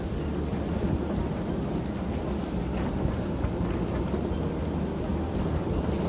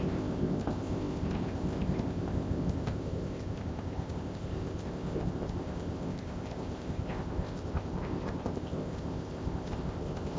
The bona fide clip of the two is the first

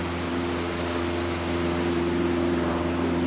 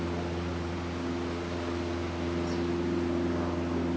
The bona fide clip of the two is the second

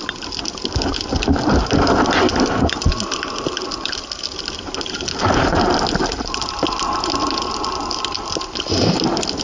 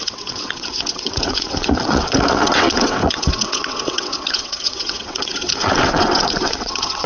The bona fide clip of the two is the first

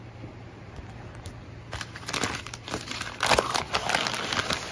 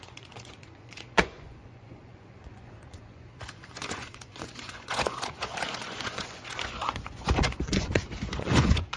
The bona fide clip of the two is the first